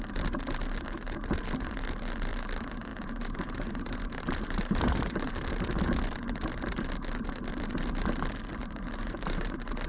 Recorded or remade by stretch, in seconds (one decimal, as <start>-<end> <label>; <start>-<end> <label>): 0.0-2.9 recorded; 2.9-5.3 remade; 5.3-8.5 recorded; 8.5-9.9 remade